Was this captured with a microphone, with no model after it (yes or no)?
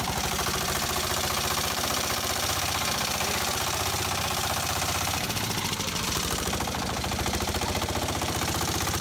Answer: no